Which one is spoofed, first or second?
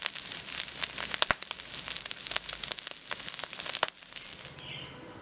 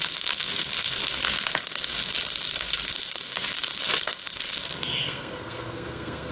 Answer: second